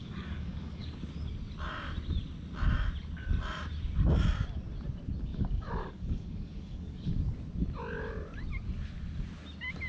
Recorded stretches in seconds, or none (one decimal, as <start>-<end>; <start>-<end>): 1.0-5.3; 7.1-9.9